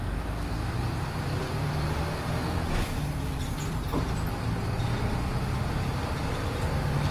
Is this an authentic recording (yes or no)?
yes